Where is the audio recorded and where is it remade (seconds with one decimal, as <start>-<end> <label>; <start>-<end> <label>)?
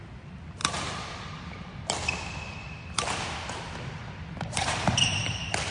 0.0-5.7 recorded